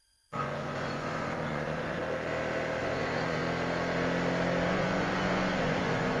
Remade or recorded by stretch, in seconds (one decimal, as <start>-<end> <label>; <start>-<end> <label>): 0.0-2.0 remade; 2.0-2.8 recorded; 2.8-3.4 remade; 3.4-4.7 recorded; 4.7-6.2 remade